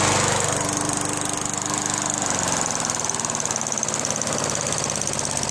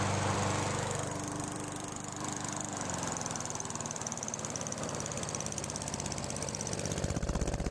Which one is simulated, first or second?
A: second